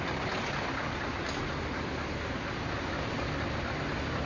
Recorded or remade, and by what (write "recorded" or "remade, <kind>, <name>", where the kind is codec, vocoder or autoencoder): recorded